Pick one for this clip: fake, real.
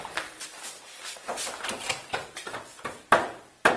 fake